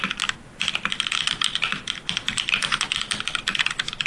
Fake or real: real